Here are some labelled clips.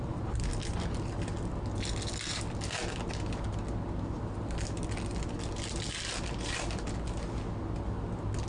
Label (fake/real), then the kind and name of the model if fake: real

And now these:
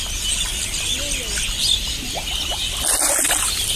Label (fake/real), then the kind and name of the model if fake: real